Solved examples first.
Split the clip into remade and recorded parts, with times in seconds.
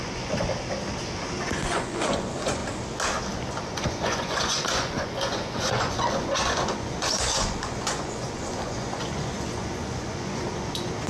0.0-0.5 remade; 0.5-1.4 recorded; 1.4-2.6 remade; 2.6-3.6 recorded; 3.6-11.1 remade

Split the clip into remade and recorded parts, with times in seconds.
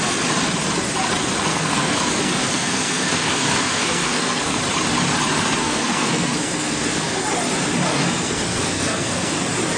0.0-1.5 recorded; 1.5-4.6 remade; 4.6-5.6 recorded; 5.6-7.2 remade; 7.2-7.9 recorded; 7.9-9.4 remade; 9.4-9.8 recorded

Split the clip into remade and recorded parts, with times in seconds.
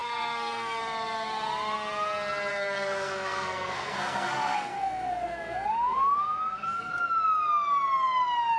0.0-0.8 remade; 0.8-2.5 recorded; 2.5-6.9 remade; 6.9-8.6 recorded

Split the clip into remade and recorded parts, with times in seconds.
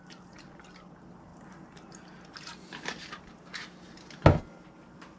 0.0-5.2 recorded